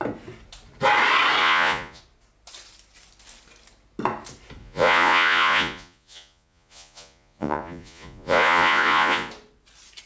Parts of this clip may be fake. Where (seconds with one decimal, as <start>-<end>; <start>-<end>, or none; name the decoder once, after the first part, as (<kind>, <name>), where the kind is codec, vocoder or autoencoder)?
1.4-2.0 (vocoder, Vocos); 4.6-9.3